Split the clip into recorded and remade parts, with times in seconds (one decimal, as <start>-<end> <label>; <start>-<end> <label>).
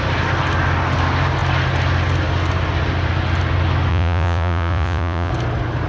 0.0-3.9 recorded; 3.9-5.3 remade; 5.3-5.9 recorded